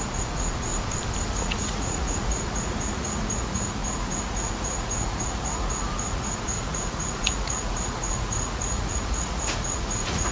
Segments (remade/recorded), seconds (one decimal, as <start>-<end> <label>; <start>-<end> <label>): 0.0-0.7 remade; 0.7-1.3 recorded; 1.3-10.3 remade